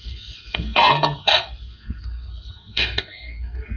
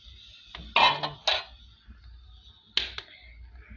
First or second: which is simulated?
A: first